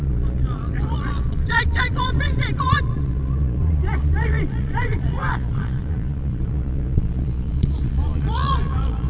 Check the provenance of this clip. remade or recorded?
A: remade